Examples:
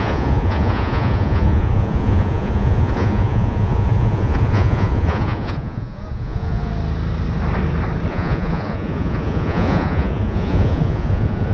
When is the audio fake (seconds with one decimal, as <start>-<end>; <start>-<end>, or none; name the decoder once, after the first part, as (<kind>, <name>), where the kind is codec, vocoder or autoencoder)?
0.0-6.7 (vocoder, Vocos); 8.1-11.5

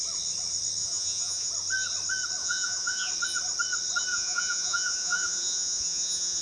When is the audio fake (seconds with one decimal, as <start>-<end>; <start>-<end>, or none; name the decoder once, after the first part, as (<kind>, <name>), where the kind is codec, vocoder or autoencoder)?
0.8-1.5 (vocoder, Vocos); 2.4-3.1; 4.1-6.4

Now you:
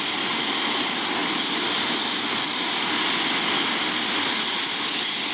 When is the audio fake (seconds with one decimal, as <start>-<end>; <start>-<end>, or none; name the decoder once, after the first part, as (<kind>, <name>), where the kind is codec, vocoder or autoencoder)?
none

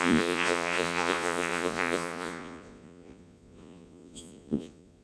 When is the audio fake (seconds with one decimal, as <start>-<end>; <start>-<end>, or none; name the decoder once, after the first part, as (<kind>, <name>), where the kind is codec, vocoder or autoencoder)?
0.0-5.0 (vocoder, Vocos)

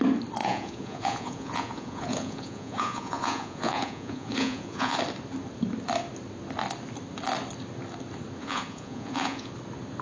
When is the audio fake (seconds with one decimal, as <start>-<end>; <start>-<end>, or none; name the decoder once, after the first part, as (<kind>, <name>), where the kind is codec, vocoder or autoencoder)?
0.4-5.0 (vocoder, Vocos); 8.4-9.5

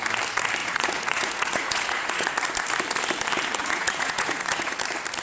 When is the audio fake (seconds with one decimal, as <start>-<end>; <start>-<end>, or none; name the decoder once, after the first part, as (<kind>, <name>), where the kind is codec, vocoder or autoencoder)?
0.6-2.3 (vocoder, Vocos); 3.6-4.8

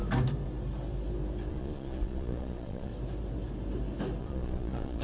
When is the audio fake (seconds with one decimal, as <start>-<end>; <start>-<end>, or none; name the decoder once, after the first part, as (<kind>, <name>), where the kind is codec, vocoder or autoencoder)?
1.5-2.9 (vocoder, Vocos); 4.2-5.0